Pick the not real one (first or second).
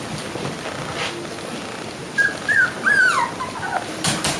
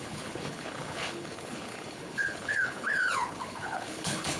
second